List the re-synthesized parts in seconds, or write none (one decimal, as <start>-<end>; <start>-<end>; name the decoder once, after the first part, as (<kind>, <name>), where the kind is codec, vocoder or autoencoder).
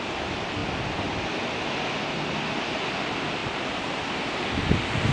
3.4-4.3 (vocoder, BigVGAN v2)